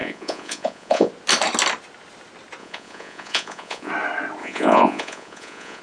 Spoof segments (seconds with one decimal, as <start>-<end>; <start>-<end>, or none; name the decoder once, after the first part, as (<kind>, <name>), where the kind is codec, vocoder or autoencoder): 0.0-1.1 (vocoder, Vocos); 2.6-3.9; 4.4-5.8